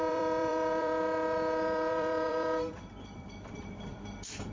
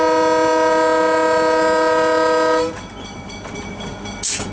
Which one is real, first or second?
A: second